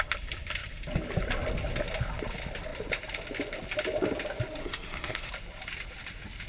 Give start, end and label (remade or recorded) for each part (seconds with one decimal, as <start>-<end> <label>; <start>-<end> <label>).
0.0-4.6 recorded; 4.6-5.3 remade; 5.3-6.5 recorded